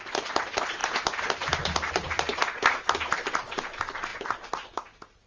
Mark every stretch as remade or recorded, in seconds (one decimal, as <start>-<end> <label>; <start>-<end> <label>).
0.0-5.3 recorded